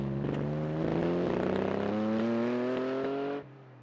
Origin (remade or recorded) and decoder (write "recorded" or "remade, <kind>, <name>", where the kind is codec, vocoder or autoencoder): recorded